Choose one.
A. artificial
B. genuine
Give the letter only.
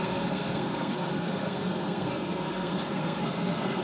A